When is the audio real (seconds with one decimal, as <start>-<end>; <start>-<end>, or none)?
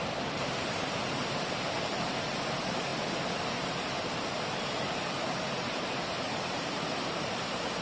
2.9-4.4